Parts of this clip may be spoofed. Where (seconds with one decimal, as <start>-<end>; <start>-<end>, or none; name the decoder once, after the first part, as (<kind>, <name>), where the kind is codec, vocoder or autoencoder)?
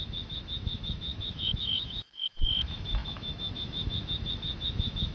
0.0-5.1 (autoencoder, DAC-VAE)